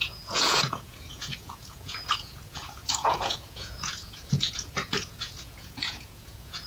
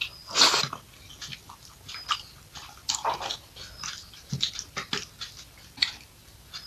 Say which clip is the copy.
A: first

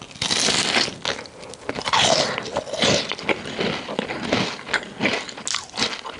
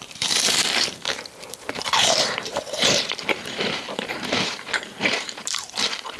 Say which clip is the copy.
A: second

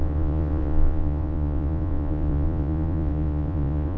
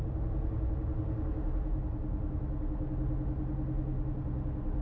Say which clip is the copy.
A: first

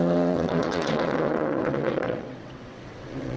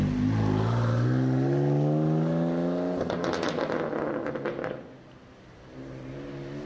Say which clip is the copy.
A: first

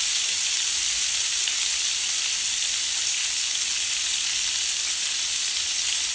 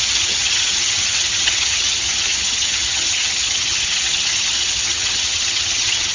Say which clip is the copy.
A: second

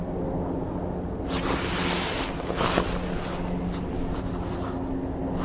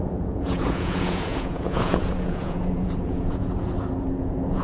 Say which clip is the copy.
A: second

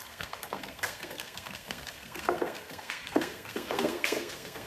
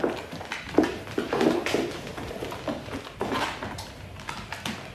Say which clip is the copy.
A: first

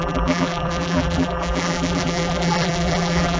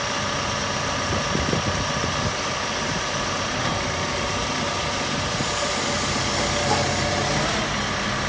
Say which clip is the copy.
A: first